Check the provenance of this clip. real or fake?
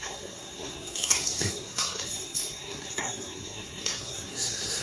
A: fake